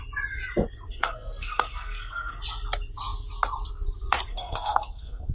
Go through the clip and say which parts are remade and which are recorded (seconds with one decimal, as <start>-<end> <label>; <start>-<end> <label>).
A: 0.0-0.9 recorded; 0.9-2.4 remade; 2.4-4.3 recorded; 4.3-5.3 remade